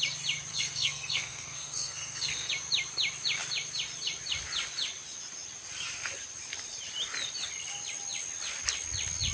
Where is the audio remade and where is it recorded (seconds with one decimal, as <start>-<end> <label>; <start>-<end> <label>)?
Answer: 0.0-0.5 recorded; 0.5-2.5 remade; 2.5-9.3 recorded